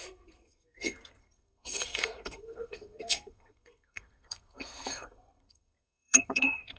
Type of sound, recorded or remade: remade